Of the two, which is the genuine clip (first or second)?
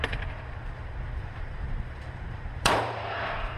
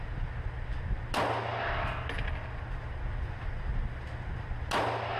second